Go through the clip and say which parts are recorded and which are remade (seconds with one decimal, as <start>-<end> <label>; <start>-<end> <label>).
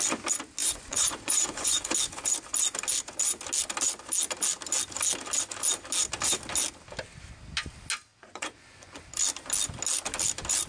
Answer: 0.0-0.6 recorded; 0.6-1.8 remade; 1.8-8.1 recorded; 8.1-9.0 remade; 9.0-10.7 recorded